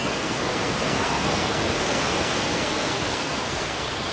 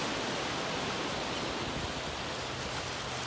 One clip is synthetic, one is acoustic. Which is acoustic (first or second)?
second